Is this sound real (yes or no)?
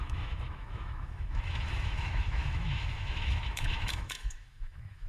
no